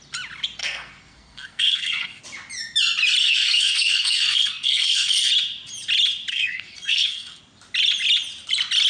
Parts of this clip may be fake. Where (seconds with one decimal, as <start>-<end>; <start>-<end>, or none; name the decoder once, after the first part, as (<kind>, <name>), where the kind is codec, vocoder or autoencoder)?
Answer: 0.6-2.2 (codec, SNAC); 3.2-5.3; 6.3-7.4